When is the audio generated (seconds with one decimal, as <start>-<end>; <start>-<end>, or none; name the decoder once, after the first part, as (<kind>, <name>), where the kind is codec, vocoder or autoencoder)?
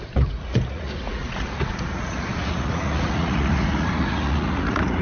0.0-5.0 (vocoder, Vocos)